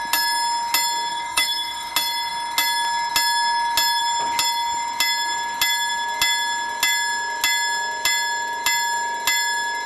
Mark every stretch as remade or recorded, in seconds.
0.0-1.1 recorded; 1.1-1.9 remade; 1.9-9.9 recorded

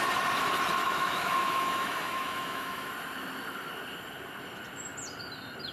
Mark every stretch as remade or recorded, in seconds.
0.0-0.8 recorded; 0.8-2.9 remade; 2.9-5.7 recorded

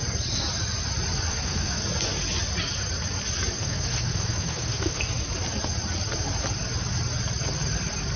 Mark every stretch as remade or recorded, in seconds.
0.0-1.3 recorded; 1.3-1.8 remade; 1.8-3.6 recorded; 3.6-5.0 remade; 5.0-8.2 recorded

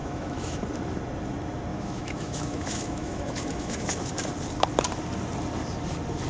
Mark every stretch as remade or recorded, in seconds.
0.0-0.6 remade; 0.6-1.7 recorded; 1.7-4.3 remade; 4.3-6.3 recorded

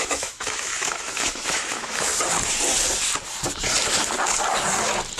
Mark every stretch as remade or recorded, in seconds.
0.0-2.1 remade; 2.1-5.2 recorded

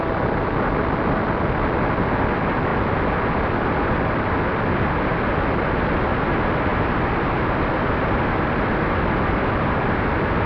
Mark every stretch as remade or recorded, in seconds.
0.0-10.5 recorded

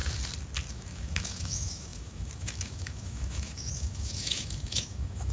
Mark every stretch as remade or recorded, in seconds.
0.0-0.7 recorded; 0.7-5.3 remade